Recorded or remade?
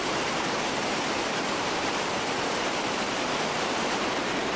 remade